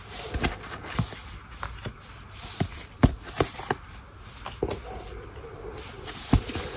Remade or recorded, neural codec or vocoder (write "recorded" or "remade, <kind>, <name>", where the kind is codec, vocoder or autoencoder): recorded